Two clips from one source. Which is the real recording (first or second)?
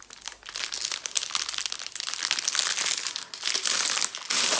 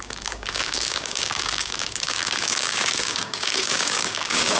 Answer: first